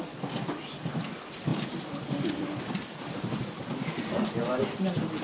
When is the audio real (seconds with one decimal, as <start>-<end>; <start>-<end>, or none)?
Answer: 0.0-1.5; 4.5-5.2